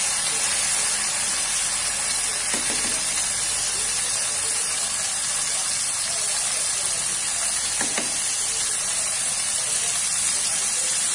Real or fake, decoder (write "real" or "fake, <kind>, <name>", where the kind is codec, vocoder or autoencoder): real